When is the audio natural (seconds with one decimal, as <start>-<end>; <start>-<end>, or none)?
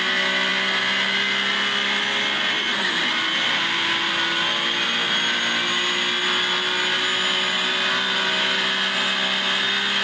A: 0.0-10.0